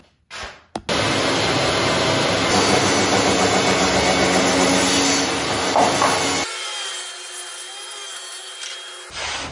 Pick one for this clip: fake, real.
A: real